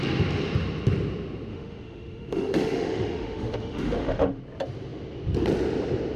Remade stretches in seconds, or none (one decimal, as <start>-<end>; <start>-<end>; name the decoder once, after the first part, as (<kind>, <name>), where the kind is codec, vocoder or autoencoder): 1.5-4.4 (autoencoder, DAC-VAE)